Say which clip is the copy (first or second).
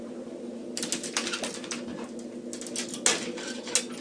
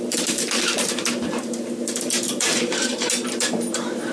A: second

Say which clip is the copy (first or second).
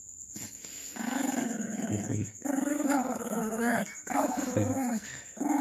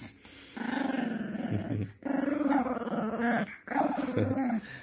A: first